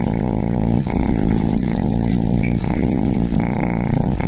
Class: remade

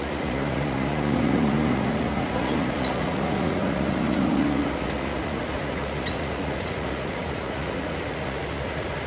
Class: remade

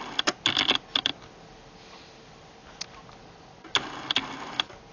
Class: recorded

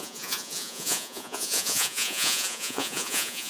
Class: remade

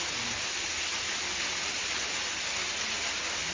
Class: recorded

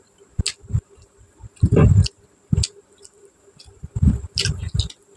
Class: recorded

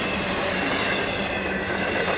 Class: recorded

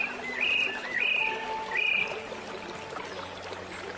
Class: recorded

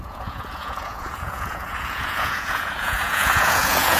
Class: remade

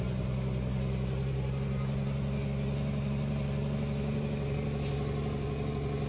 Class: recorded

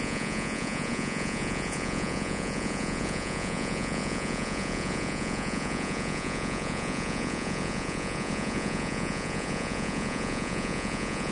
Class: remade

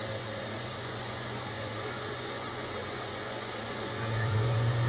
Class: remade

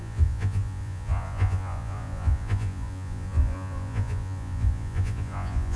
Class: remade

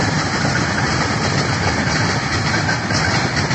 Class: recorded